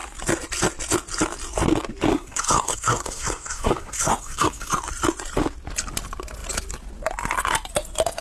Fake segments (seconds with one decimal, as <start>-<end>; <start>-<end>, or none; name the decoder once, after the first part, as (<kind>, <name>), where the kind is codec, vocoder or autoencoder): 2.1-4.7 (codec, SNAC)